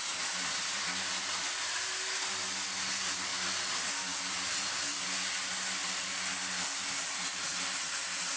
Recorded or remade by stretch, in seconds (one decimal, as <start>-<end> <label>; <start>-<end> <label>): 0.0-8.4 recorded